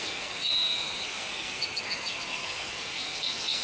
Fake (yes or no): yes